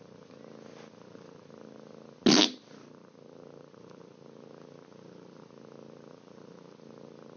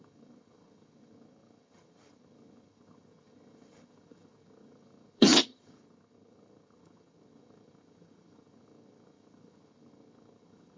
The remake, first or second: second